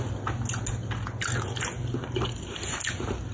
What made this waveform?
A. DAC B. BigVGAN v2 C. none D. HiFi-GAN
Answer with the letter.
C